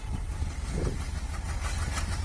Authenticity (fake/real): real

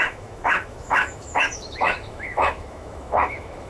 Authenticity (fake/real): fake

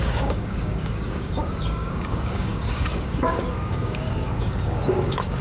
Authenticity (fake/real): fake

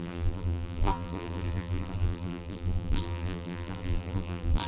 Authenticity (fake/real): fake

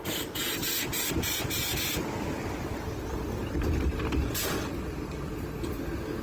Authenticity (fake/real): real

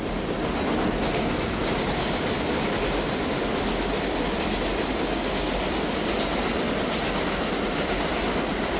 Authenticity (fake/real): real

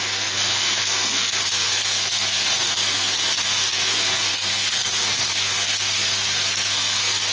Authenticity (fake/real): fake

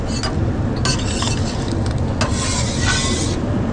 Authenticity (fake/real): real